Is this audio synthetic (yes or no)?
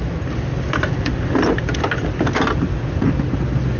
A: no